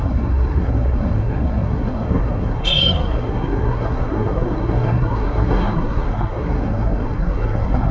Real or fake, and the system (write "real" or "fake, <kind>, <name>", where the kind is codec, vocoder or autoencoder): fake, codec, SNAC